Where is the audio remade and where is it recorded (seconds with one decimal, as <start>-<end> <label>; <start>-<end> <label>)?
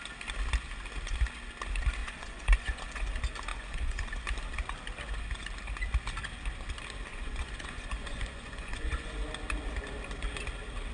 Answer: 0.0-2.0 recorded; 2.0-3.0 remade; 3.0-3.5 recorded; 3.5-4.1 remade; 4.1-7.1 recorded; 7.1-9.1 remade; 9.1-10.9 recorded